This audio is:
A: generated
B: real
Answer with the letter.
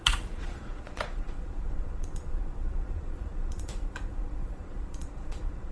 A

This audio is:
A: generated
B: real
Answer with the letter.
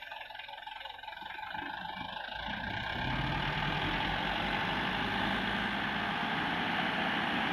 B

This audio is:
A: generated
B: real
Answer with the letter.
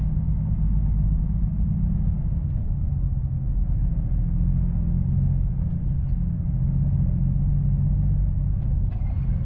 B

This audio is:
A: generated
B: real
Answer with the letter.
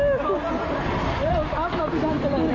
B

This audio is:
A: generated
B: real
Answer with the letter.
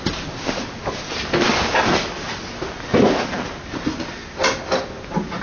B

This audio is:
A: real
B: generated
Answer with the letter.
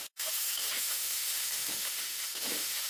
B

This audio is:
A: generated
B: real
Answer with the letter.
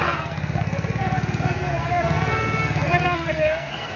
A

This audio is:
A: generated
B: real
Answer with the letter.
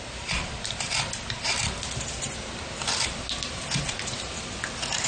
B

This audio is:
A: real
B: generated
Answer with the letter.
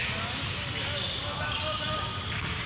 A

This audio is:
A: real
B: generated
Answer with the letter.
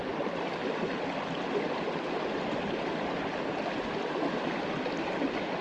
A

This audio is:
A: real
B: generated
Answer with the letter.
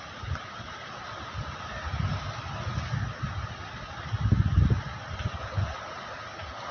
A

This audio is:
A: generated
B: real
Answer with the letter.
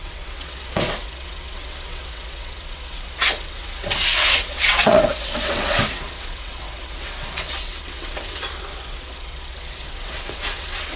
A